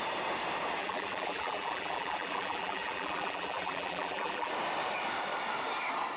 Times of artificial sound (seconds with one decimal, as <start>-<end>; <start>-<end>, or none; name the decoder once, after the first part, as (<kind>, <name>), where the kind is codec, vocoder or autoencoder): 0.8-4.5 (vocoder, BigVGAN v2)

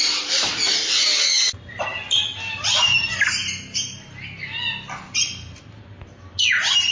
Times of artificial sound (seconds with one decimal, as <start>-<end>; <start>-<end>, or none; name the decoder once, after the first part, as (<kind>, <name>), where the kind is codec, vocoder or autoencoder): none

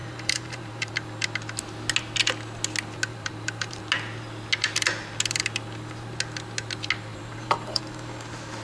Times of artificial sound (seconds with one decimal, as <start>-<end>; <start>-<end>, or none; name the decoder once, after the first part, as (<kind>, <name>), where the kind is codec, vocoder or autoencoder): 0.0-0.9 (vocoder, BigVGAN v2); 3.1-3.8; 7.1-7.8